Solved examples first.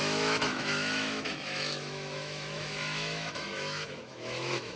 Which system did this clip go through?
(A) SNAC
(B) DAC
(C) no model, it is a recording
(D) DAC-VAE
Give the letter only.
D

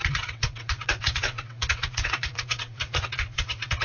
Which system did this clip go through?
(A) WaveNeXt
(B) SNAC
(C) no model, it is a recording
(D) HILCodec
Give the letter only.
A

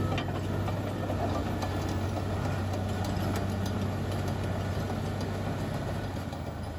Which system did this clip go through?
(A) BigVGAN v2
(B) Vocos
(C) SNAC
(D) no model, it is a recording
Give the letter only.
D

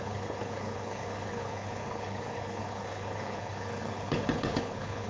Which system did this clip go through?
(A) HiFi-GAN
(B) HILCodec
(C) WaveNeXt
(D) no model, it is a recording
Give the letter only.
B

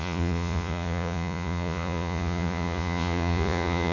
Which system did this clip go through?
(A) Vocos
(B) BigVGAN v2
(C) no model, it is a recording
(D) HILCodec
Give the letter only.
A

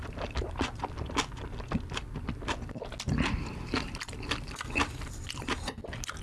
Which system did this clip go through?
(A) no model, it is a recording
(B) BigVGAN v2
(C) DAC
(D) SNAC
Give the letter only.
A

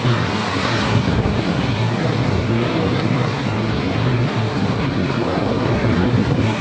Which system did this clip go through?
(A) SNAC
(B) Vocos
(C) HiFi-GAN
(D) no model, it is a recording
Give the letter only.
A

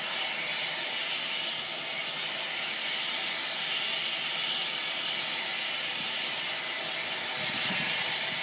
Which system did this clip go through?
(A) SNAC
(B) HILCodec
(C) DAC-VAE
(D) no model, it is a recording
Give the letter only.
D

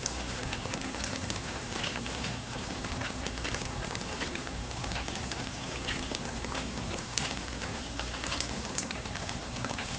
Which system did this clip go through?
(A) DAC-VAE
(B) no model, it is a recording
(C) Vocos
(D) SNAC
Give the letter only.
D